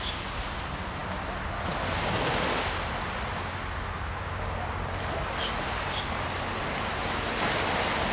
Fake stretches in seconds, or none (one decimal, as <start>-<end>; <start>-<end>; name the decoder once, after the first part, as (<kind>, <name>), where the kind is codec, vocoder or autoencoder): none